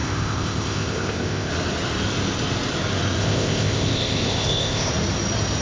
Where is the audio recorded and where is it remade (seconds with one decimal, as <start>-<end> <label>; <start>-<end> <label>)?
0.0-1.5 remade; 1.5-3.2 recorded; 3.2-4.9 remade; 4.9-5.6 recorded